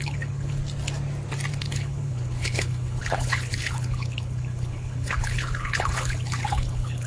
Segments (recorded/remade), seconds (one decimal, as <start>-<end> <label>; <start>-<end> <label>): 0.0-0.6 remade; 0.6-1.5 recorded; 1.5-7.1 remade